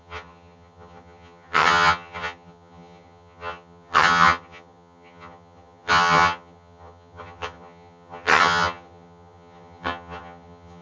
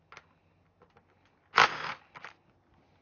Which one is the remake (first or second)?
first